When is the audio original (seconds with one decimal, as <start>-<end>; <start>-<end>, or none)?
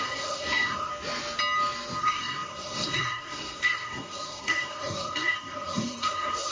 0.9-2.0